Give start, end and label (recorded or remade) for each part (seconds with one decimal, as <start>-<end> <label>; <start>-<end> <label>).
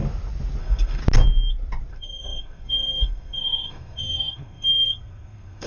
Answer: 0.0-0.6 recorded; 0.6-1.0 remade; 1.0-1.9 recorded; 1.9-5.7 remade